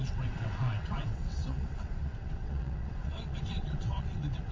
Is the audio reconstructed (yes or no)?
yes